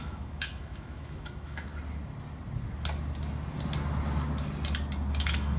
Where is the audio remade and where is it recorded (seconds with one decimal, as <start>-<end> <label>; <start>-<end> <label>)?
0.0-1.7 remade; 1.7-5.1 recorded; 5.1-5.6 remade